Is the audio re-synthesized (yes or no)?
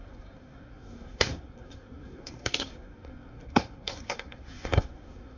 yes